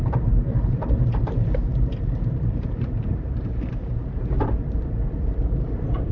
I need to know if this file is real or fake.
fake